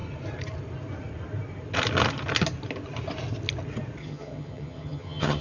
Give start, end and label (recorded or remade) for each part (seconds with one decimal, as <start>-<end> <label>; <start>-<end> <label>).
0.0-4.0 recorded; 4.0-5.4 remade